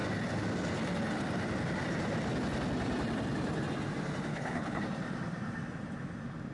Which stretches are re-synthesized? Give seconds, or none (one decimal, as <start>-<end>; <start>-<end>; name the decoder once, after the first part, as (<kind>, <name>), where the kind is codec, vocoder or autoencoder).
4.3-4.8 (codec, HILCodec)